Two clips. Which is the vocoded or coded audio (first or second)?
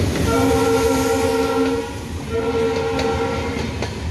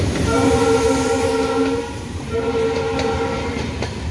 second